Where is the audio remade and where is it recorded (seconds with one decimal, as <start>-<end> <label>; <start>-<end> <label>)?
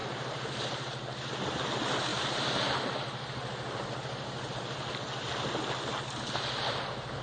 0.0-1.3 remade; 1.3-2.1 recorded; 2.1-4.5 remade; 4.5-7.2 recorded